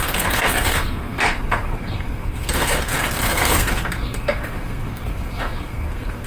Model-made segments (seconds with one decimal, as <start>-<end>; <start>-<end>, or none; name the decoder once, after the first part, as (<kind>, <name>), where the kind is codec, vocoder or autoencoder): 0.0-6.3 (codec, SNAC)

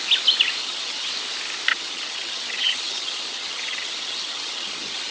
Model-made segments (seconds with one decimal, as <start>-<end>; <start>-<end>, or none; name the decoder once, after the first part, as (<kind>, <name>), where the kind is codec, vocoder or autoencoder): 0.6-1.1 (vocoder, HiFi-GAN); 1.7-5.1

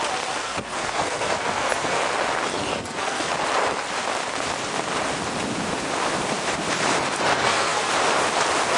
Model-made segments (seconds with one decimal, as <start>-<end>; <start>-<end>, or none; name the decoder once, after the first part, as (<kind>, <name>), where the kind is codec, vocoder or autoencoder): 0.4-2.0 (codec, SNAC); 2.7-3.3; 7.3-7.9

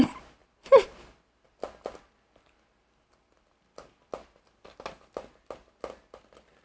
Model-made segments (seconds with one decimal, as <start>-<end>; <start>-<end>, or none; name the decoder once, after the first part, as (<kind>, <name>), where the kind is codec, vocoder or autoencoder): none

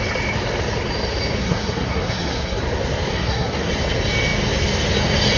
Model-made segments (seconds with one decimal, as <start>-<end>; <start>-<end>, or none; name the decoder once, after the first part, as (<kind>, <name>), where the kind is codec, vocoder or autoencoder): 1.4-2.6 (codec, SNAC); 3.1-3.7

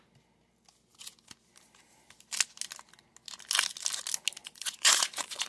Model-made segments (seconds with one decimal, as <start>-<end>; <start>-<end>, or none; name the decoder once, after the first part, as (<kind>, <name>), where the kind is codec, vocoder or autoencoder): 4.4-5.5 (vocoder, Vocos)

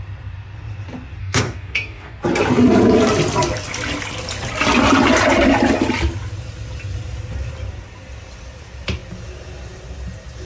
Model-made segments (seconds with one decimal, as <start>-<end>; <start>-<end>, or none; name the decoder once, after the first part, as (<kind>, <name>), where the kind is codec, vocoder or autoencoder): 1.2-2.2 (codec, DAC)